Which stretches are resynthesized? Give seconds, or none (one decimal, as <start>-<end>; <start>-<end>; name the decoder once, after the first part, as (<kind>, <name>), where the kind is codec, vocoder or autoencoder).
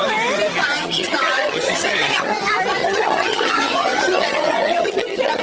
0.6-2.4 (vocoder, HiFi-GAN); 2.8-5.4